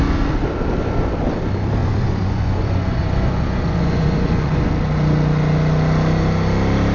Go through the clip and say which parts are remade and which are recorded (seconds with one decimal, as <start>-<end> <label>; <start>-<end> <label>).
0.0-1.8 recorded; 1.8-4.7 remade; 4.7-6.9 recorded